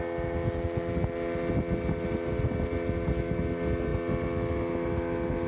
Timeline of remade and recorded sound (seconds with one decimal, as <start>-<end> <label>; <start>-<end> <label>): 0.0-5.5 recorded